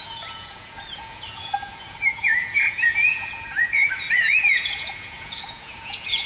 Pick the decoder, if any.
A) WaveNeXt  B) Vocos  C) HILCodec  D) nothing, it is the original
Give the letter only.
B